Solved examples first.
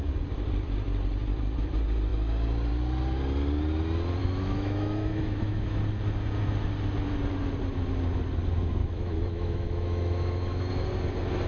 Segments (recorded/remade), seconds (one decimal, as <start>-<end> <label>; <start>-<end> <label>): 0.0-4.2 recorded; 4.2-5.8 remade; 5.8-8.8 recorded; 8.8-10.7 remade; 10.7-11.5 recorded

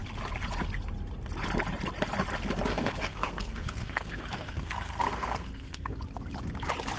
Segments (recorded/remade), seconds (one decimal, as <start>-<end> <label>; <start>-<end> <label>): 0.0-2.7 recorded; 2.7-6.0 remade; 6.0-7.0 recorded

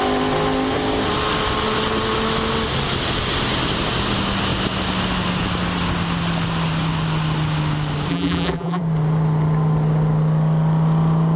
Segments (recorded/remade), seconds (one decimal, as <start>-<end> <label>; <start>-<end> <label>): 0.0-8.1 recorded; 8.1-8.8 remade; 8.8-11.4 recorded

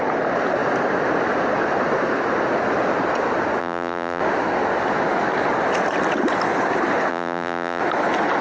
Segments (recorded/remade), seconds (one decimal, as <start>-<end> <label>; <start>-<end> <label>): 0.0-3.6 recorded; 3.6-4.2 remade; 4.2-7.1 recorded; 7.1-7.8 remade; 7.8-8.4 recorded

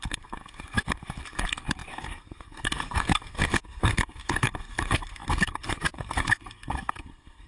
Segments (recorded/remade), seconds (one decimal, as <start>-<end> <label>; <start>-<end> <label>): 0.0-7.5 remade

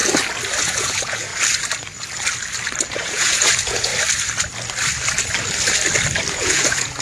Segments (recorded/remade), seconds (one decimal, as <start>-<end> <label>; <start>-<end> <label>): 0.0-0.6 recorded; 0.6-1.3 remade; 1.3-2.9 recorded; 2.9-3.9 remade; 3.9-6.3 recorded; 6.3-7.0 remade

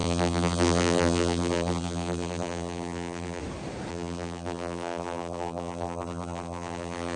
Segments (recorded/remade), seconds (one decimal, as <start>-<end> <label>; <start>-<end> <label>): 0.0-3.4 remade; 3.4-3.9 recorded; 3.9-7.2 remade

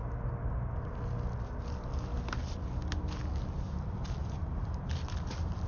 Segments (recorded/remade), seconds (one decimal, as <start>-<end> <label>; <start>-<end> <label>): 0.0-4.2 recorded; 4.2-4.9 remade; 4.9-5.7 recorded